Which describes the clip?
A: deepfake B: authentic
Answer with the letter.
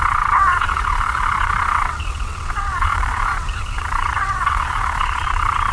A